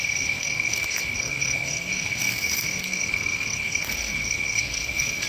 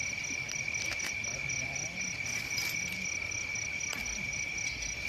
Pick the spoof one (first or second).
first